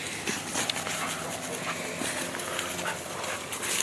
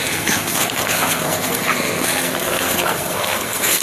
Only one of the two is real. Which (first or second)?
first